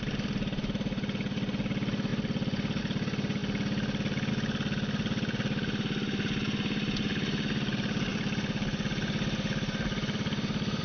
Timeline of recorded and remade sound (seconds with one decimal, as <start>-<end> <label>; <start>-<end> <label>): 0.0-10.8 recorded